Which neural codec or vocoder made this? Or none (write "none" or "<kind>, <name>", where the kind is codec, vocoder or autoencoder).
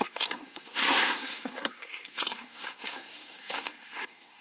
codec, SNAC